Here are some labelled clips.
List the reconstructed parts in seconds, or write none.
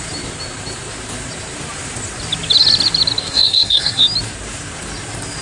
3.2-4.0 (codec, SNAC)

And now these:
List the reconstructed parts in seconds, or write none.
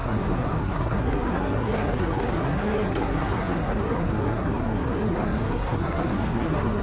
0.0-6.8 (codec, SNAC)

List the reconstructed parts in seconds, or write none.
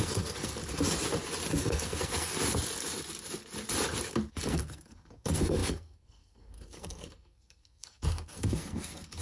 0.0-0.6 (codec, SNAC); 1.6-2.3; 4.3-9.2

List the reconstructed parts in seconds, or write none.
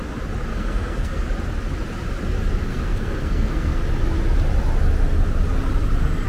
0.5-1.2 (codec, SNAC); 2.7-3.8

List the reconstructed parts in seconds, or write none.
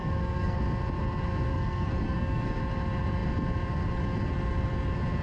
0.0-0.6 (codec, SNAC); 1.5-2.6